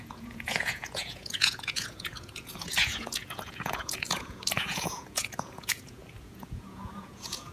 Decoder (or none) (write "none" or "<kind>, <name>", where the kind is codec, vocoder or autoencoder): vocoder, Vocos